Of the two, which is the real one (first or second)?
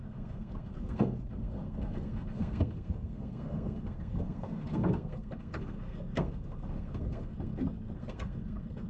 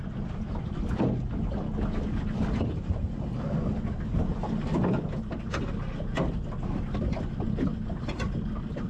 second